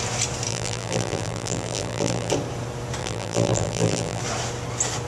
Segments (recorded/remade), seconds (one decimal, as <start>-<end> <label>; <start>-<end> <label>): 0.0-0.5 recorded; 0.5-2.3 remade; 2.3-3.0 recorded; 3.0-4.2 remade; 4.2-5.1 recorded